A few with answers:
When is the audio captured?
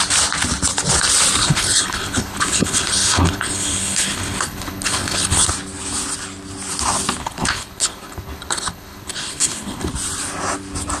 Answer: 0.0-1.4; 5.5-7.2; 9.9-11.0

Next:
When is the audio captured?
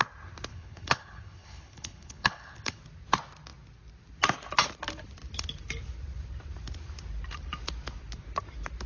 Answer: 0.0-0.5; 2.8-8.9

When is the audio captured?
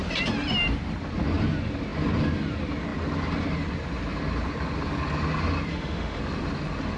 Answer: 0.0-5.7; 6.2-7.0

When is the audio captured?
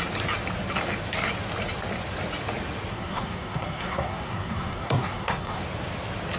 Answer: 0.0-2.9; 5.6-6.4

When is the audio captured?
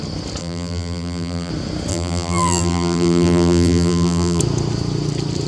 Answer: 0.0-0.4; 1.5-1.9; 4.4-5.5